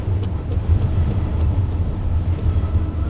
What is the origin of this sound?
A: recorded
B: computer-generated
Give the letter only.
A